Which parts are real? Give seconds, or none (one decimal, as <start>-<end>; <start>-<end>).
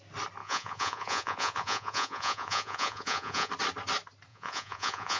0.0-0.4; 3.5-4.3